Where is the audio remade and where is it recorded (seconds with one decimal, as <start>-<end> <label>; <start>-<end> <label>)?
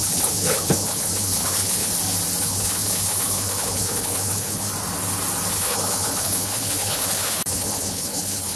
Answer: 0.0-1.9 remade; 1.9-2.4 recorded; 2.4-4.7 remade; 4.7-5.5 recorded; 5.5-8.6 remade